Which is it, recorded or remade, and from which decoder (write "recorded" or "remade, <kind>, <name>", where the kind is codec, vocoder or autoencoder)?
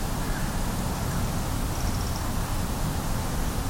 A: recorded